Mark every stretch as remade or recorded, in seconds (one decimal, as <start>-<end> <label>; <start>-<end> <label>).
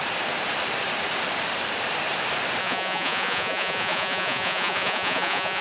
0.0-2.6 recorded; 2.6-5.6 remade